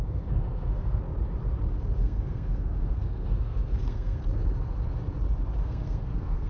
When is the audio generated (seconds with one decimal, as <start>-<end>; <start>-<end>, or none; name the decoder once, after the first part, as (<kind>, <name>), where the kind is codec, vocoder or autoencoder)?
0.0-1.0 (codec, SNAC); 2.0-4.2; 5.6-6.5